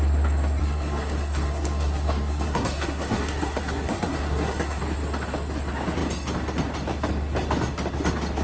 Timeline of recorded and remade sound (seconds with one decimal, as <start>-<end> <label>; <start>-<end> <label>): 0.0-0.6 recorded; 0.6-4.8 remade; 4.8-8.4 recorded